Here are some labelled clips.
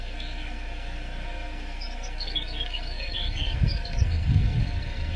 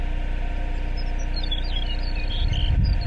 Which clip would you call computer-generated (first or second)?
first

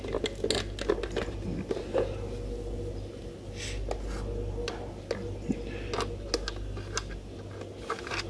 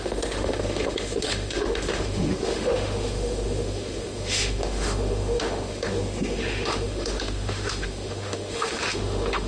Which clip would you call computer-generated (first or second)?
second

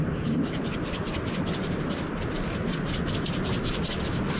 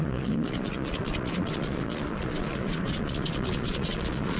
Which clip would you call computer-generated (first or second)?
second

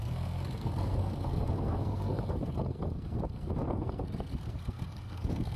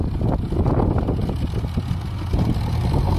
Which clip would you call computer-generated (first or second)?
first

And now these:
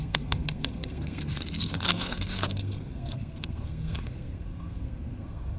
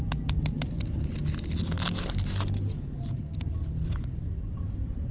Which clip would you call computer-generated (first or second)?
first